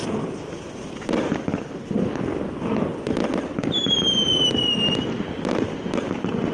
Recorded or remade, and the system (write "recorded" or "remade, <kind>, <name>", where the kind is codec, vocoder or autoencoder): recorded